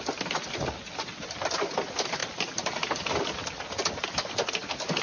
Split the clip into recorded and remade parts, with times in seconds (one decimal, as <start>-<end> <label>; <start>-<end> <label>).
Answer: 0.0-5.0 recorded